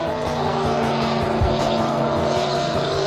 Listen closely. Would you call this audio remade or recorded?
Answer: remade